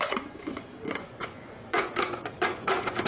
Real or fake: fake